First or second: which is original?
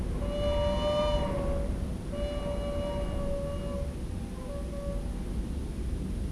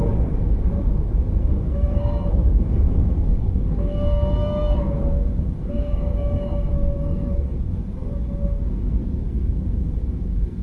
first